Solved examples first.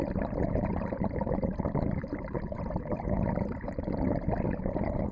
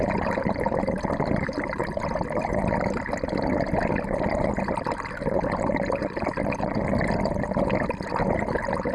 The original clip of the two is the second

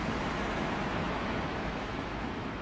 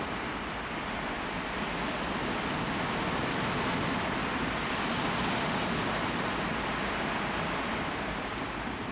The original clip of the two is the second